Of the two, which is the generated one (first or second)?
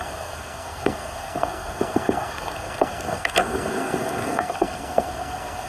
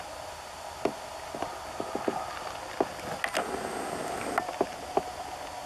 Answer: first